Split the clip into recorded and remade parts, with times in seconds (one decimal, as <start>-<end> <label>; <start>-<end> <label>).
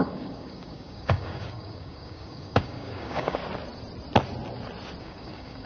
0.0-3.4 remade; 3.4-5.0 recorded; 5.0-5.7 remade